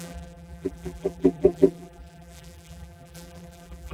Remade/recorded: remade